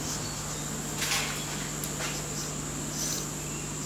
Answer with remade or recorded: recorded